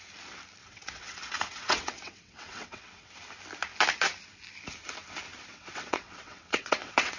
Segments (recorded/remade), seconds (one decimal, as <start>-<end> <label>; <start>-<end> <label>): 0.0-0.6 recorded; 0.6-3.1 remade; 3.1-5.5 recorded; 5.5-7.2 remade